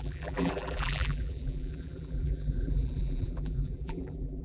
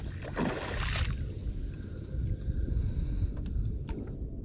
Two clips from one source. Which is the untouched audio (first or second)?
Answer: second